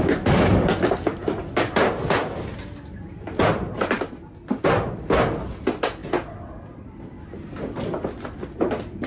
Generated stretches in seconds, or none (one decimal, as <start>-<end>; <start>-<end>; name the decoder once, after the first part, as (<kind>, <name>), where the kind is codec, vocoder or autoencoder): none